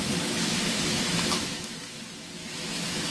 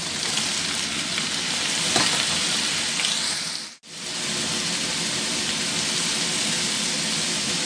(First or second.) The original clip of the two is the second